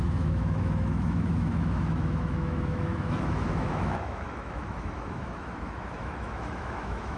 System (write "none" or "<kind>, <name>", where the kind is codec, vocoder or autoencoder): autoencoder, DAC-VAE